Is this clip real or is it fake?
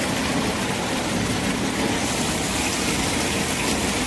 real